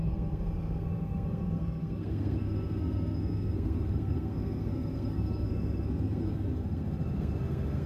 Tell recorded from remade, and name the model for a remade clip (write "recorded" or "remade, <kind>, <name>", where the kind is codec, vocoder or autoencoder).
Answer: remade, codec, SNAC